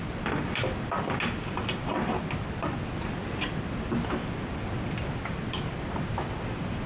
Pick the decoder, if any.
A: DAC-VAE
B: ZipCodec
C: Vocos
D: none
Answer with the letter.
D